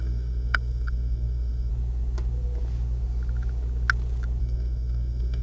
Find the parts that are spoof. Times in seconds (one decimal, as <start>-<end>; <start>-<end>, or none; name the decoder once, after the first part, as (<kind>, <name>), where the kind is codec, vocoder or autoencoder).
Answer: 0.0-1.7 (codec, SNAC); 4.4-5.4